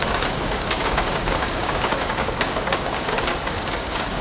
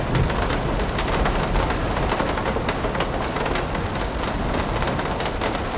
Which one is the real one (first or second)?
second